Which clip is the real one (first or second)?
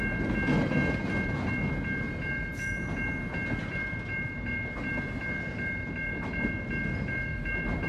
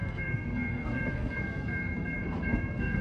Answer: first